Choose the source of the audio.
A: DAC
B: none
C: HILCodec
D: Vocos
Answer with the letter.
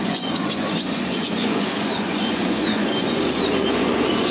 D